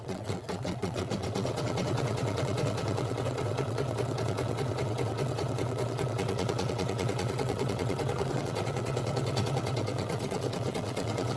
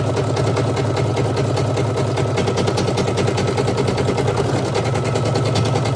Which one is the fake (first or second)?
first